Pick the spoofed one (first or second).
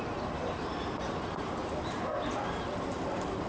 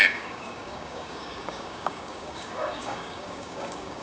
second